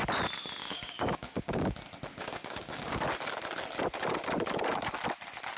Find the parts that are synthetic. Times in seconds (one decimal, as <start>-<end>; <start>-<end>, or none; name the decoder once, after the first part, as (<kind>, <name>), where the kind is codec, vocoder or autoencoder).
0.6-1.7 (codec, DAC); 2.1-3.0